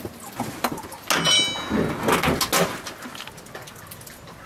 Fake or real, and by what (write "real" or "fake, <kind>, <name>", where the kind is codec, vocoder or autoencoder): real